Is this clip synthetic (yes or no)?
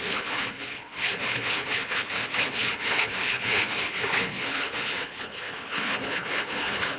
yes